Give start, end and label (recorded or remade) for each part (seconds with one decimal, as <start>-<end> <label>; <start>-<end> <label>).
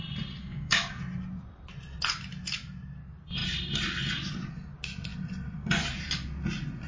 0.0-0.4 recorded; 0.4-1.0 remade; 1.0-6.9 recorded